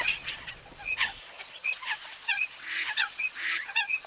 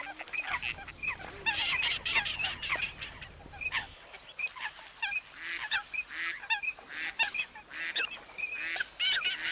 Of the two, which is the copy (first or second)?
first